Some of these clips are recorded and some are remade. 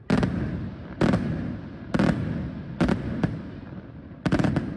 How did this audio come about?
recorded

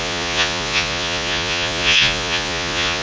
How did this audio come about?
remade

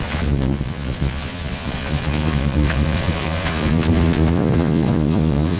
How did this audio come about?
remade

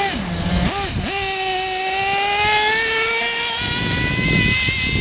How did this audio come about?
recorded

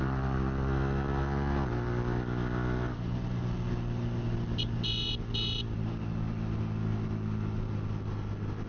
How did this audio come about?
recorded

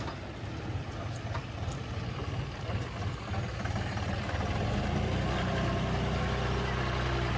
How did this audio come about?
recorded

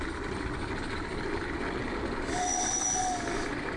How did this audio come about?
recorded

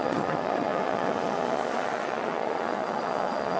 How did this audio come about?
remade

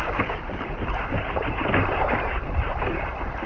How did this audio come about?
recorded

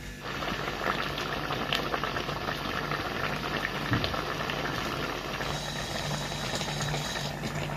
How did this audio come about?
recorded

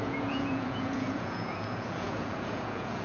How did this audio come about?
remade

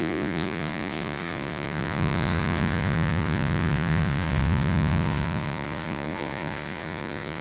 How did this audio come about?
remade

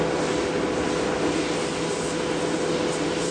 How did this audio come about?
recorded